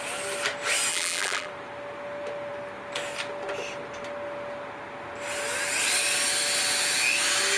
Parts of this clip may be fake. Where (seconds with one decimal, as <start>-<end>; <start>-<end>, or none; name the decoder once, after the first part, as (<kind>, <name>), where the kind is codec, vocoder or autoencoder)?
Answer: 0.9-1.5 (vocoder, BigVGAN v2)